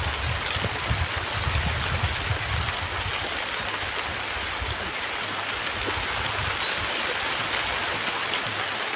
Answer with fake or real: real